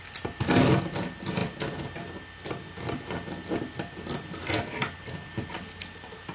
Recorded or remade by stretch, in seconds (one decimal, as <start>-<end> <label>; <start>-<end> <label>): 0.0-6.3 recorded